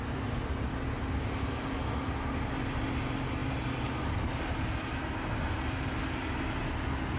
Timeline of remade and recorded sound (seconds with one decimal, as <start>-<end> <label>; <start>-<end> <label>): 0.0-7.2 recorded